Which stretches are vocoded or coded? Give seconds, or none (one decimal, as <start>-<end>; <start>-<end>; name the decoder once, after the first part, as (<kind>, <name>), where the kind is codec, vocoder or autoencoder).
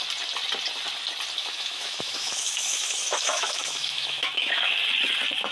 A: 1.4-4.7 (autoencoder, DAC-VAE)